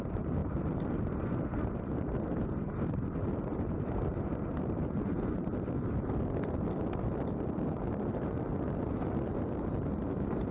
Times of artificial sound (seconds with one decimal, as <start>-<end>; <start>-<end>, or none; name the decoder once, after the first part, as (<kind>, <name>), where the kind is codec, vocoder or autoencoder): 0.0-0.4 (vocoder, BigVGAN v2); 1.1-5.5; 10.1-10.5